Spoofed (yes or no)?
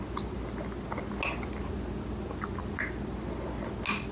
no